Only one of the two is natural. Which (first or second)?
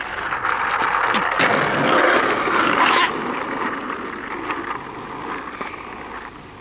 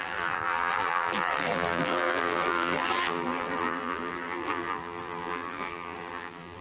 first